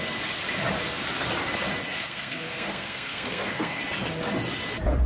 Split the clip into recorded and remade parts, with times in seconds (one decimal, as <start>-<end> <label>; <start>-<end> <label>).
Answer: 0.0-1.9 recorded; 1.9-3.8 remade; 3.8-5.1 recorded